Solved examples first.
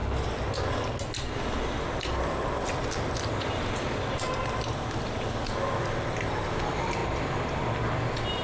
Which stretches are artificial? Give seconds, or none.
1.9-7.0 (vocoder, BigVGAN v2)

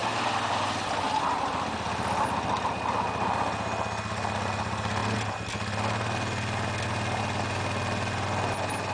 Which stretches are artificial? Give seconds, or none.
none

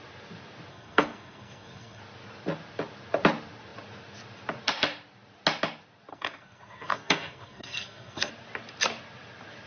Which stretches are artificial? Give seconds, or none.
0.7-2.0 (codec, SNAC); 6.1-8.3

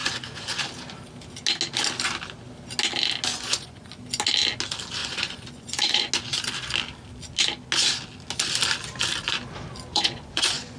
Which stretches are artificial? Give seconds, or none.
0.0-0.6 (vocoder, Vocos); 3.3-3.9; 5.0-6.1; 9.9-10.8

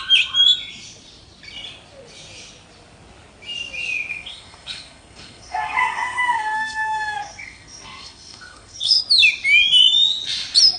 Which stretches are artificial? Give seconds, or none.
4.1-9.0 (codec, SNAC)

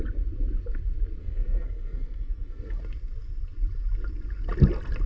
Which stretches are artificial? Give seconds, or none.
1.2-2.8 (codec, SNAC)

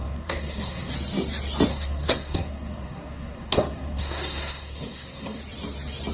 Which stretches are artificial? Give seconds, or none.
0.0-0.9 (codec, SNAC); 1.7-5.4

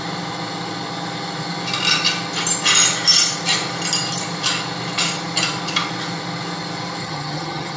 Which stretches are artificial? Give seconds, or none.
7.0-7.8 (vocoder, HiFi-GAN)